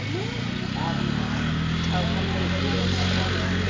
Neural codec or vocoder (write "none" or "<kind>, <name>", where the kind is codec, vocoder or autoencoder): none